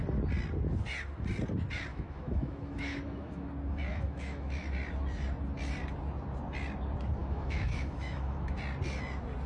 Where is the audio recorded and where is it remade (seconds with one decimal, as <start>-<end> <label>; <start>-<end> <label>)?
0.0-1.9 recorded; 1.9-3.5 remade; 3.5-3.9 recorded; 3.9-4.6 remade; 4.6-7.2 recorded; 7.2-8.6 remade; 8.6-9.5 recorded